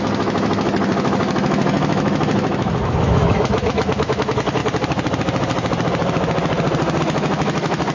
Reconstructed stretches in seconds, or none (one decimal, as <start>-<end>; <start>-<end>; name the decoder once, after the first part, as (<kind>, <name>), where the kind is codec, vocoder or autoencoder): 0.0-4.6 (autoencoder, DAC-VAE); 7.0-7.9